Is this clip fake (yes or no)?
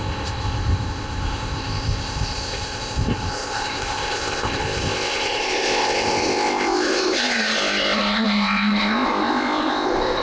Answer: yes